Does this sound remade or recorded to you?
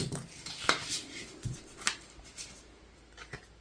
recorded